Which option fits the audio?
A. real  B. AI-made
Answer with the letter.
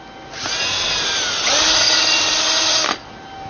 A